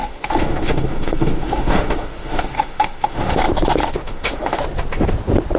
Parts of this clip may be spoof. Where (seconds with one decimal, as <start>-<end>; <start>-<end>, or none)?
0.0-3.4; 3.8-4.6